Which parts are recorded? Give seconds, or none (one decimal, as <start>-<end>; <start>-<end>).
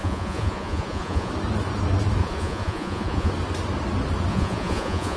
1.3-2.2; 3.3-4.3